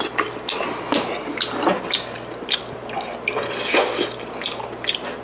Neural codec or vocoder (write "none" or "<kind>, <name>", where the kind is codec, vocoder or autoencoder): none